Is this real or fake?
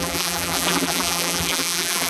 fake